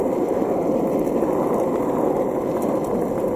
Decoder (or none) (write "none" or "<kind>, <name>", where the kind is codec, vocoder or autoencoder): none